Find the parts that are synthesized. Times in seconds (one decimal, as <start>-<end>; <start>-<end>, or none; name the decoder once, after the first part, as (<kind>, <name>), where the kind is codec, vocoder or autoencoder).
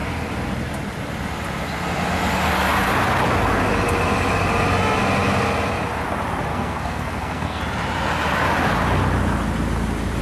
6.5-7.6 (codec, SNAC)